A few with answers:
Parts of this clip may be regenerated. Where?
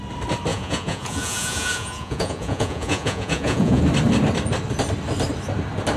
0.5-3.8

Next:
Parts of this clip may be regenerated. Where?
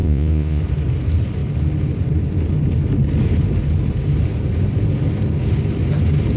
0.0-0.6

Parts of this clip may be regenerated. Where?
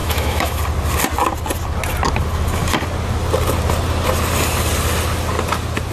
0.0-0.6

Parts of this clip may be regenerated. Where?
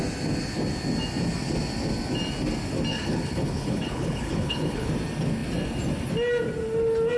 2.9-4.9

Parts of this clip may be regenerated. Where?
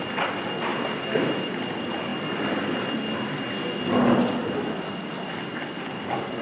none